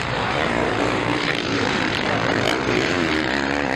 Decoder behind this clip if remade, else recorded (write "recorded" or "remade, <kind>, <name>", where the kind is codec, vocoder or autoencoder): remade, vocoder, BigVGAN v2